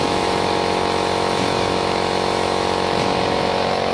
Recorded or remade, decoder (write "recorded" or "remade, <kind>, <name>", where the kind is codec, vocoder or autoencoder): remade, autoencoder, DAC-VAE